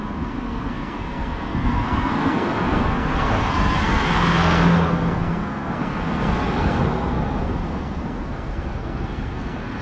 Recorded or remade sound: remade